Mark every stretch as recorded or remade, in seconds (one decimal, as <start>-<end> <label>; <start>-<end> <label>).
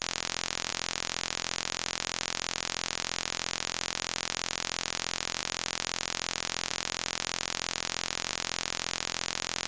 0.0-9.7 recorded